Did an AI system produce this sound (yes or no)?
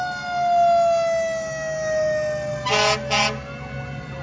no